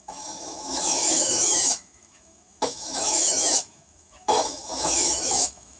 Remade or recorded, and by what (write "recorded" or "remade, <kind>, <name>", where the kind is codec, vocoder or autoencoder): remade, autoencoder, DAC-VAE